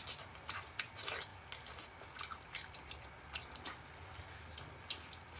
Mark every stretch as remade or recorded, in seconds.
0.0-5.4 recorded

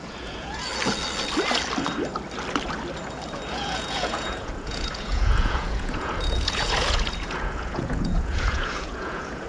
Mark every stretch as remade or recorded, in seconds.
0.0-0.7 remade; 0.7-3.5 recorded; 3.5-9.5 remade

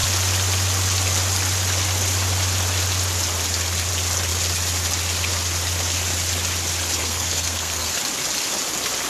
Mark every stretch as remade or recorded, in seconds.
0.0-7.0 recorded; 7.0-8.0 remade; 8.0-9.1 recorded

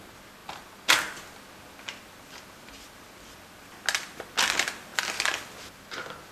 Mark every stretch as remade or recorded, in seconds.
0.0-6.3 recorded